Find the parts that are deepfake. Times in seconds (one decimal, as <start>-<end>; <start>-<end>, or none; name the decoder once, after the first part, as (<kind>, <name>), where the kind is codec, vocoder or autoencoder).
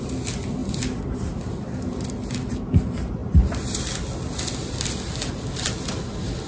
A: none